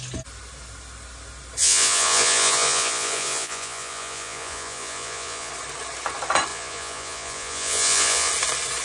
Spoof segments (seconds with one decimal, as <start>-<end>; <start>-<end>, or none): 1.6-5.5; 6.5-8.3